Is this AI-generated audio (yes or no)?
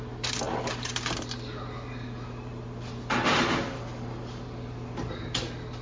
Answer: no